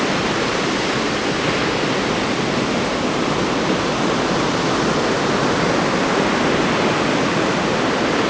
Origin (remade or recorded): recorded